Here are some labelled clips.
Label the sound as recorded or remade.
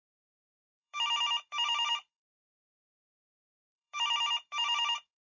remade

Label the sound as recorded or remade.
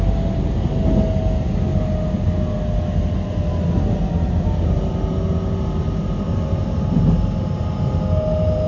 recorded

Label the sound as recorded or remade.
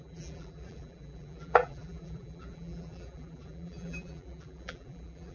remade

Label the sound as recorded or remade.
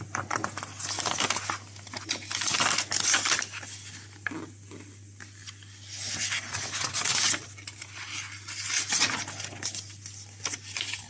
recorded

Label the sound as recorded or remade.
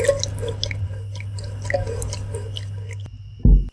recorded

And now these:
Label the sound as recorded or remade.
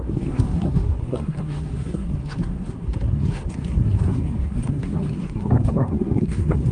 remade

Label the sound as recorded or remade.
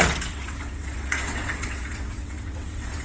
remade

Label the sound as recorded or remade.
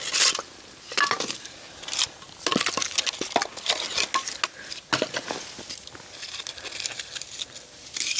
recorded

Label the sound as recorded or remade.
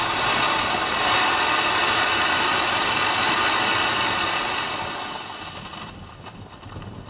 recorded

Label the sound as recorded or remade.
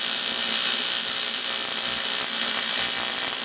recorded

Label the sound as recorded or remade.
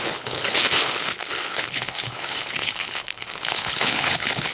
remade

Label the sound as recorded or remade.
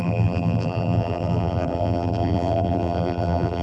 remade